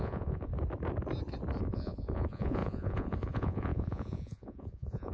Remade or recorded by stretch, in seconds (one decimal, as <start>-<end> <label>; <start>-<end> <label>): 0.0-0.5 remade; 0.5-1.6 recorded; 1.6-5.1 remade